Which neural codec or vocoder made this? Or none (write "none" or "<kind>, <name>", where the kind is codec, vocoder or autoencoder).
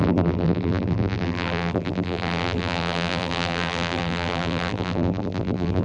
vocoder, BigVGAN v2